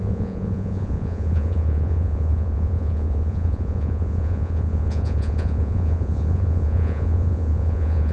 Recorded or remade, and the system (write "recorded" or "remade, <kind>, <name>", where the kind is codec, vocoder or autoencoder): remade, vocoder, Vocos